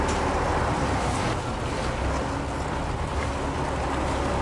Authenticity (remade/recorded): recorded